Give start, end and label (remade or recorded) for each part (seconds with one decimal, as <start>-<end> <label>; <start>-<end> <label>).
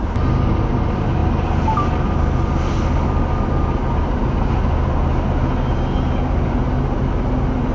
0.0-7.7 recorded